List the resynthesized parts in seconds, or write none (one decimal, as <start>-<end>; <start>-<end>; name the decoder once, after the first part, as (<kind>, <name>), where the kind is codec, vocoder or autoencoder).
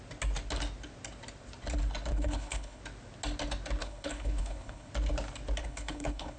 2.1-2.8 (codec, HILCodec); 3.8-4.9; 5.6-6.4